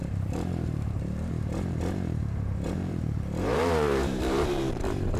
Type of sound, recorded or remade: remade